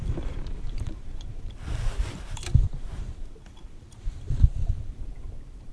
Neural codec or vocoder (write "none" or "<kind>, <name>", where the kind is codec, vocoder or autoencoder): vocoder, BigVGAN v2